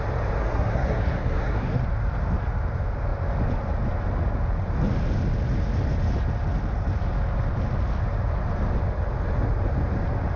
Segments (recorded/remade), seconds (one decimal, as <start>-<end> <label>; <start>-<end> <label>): 0.0-0.4 recorded; 0.4-1.8 remade; 1.8-10.4 recorded